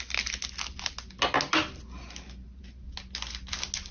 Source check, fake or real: real